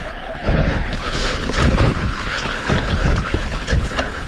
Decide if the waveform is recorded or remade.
remade